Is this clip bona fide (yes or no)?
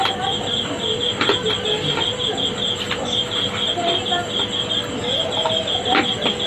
yes